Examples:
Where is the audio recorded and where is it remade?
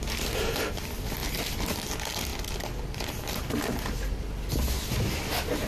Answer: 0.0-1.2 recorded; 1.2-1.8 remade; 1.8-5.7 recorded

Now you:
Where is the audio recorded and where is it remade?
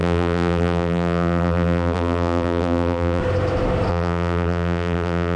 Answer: 0.0-3.2 remade; 3.2-3.9 recorded; 3.9-5.4 remade